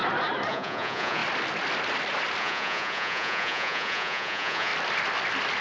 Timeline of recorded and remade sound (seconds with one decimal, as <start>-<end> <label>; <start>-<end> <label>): 0.0-0.5 recorded; 0.5-1.2 remade; 1.2-2.4 recorded; 2.4-4.7 remade; 4.7-5.6 recorded